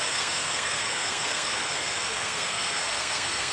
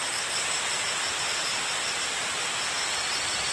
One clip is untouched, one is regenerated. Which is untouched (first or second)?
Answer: second